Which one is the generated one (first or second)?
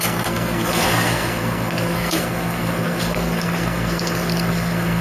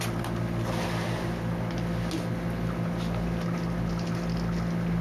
first